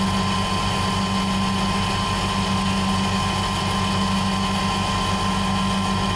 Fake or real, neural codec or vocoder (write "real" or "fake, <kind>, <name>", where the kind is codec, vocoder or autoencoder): real